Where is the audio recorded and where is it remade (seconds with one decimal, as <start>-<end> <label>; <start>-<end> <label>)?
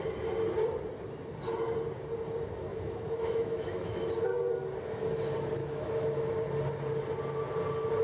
0.0-2.7 recorded; 2.7-4.0 remade; 4.0-5.6 recorded; 5.6-6.3 remade; 6.3-8.0 recorded